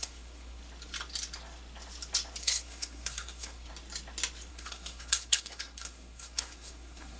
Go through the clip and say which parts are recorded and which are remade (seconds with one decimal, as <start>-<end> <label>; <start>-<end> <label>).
0.0-0.6 remade; 0.6-2.4 recorded; 2.4-3.7 remade; 3.7-4.5 recorded; 4.5-7.2 remade